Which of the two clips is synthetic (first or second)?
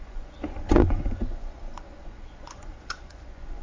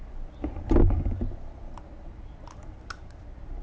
first